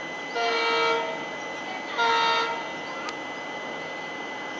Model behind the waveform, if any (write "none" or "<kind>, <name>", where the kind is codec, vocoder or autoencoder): none